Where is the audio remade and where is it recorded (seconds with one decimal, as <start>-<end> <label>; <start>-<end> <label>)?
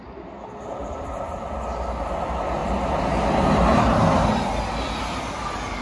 0.0-5.8 recorded